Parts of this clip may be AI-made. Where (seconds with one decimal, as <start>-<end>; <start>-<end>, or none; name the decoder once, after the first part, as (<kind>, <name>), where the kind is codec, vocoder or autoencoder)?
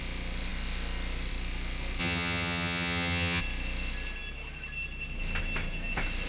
2.0-3.4 (vocoder, HiFi-GAN)